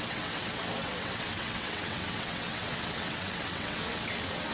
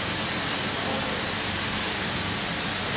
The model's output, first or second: first